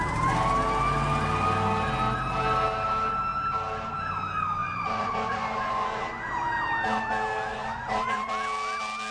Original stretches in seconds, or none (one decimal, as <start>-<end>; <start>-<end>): 0.0-4.6; 6.3-7.5; 8.3-9.1